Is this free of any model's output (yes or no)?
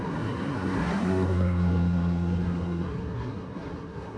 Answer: no